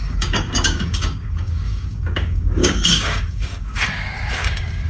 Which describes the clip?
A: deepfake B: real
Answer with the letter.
A